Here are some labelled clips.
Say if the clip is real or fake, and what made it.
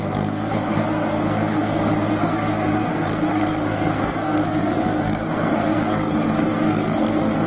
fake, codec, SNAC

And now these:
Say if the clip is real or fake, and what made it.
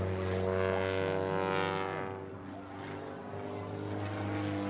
real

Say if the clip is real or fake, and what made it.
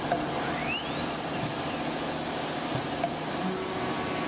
real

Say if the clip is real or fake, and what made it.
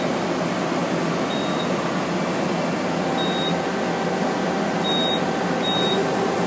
real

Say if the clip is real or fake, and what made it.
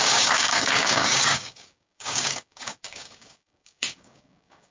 fake, codec, DAC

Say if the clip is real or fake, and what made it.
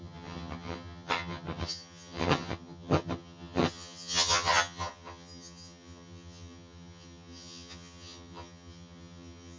fake, vocoder, HiFi-GAN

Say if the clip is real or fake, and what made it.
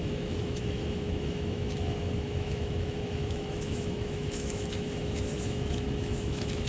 fake, autoencoder, DAC-VAE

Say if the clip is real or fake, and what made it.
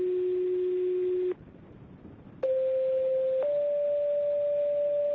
real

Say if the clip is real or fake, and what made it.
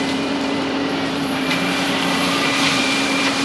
fake, vocoder, BigVGAN v2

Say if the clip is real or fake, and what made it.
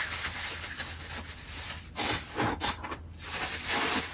real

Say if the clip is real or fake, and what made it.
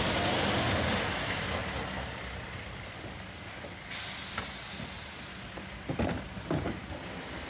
real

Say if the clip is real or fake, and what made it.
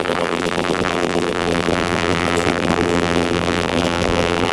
fake, vocoder, BigVGAN v2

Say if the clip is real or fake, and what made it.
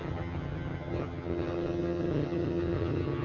fake, vocoder, HiFi-GAN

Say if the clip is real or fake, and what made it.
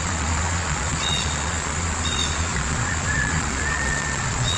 fake, vocoder, Vocos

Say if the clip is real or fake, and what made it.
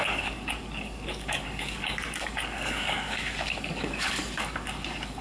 fake, codec, DAC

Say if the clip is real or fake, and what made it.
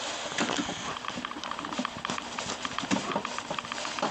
fake, vocoder, BigVGAN v2